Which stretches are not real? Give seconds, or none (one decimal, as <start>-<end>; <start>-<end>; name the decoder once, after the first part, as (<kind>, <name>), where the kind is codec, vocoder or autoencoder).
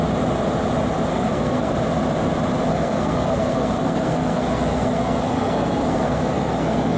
1.1-1.7 (codec, SNAC); 2.7-7.0